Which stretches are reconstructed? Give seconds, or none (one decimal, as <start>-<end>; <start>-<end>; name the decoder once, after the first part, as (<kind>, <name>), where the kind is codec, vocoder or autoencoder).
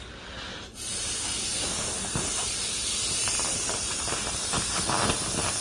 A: 1.5-4.9 (vocoder, BigVGAN v2)